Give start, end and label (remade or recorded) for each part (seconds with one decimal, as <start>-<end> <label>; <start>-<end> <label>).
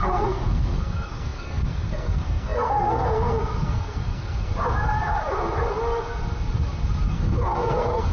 0.0-4.5 remade; 4.5-7.1 recorded; 7.1-8.1 remade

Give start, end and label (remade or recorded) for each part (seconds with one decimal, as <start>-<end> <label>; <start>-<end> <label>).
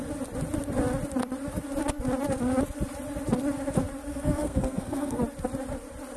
0.0-4.1 recorded; 4.1-5.2 remade; 5.2-6.2 recorded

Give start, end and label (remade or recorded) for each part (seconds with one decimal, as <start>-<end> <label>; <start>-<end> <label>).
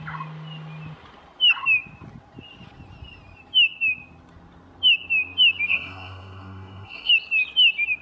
0.0-5.7 recorded; 5.7-7.1 remade; 7.1-8.0 recorded